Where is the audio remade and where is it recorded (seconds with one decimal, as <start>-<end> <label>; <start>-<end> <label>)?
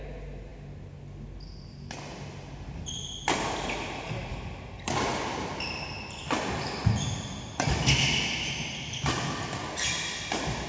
0.0-10.7 recorded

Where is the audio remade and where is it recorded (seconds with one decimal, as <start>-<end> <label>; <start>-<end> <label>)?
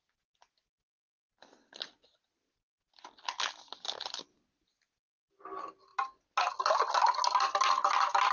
0.0-8.3 recorded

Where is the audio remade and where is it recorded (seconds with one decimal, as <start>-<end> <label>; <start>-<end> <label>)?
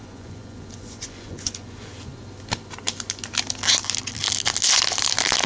0.0-2.1 remade; 2.1-5.5 recorded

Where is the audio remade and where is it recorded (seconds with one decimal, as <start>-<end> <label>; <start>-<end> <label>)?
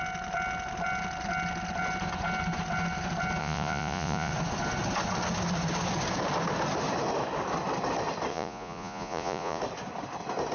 0.0-3.4 recorded; 3.4-4.3 remade; 4.3-8.3 recorded; 8.3-9.6 remade; 9.6-10.5 recorded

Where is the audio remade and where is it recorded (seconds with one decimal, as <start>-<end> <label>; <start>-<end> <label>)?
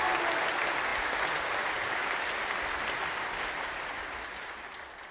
0.0-5.1 recorded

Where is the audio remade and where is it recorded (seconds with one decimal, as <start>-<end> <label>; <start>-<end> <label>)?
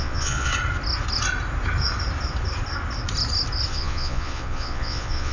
0.0-0.5 remade; 0.5-3.7 recorded; 3.7-5.3 remade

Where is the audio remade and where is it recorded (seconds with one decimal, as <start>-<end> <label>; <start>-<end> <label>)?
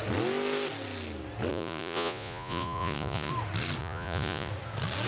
0.0-1.5 recorded; 1.5-3.3 remade; 3.3-3.8 recorded; 3.8-4.5 remade; 4.5-5.1 recorded